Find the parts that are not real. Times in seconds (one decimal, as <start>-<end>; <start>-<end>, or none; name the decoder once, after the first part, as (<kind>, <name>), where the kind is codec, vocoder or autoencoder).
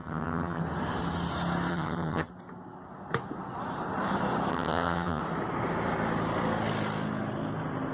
0.0-0.6 (vocoder, HiFi-GAN); 1.7-2.3; 4.5-5.2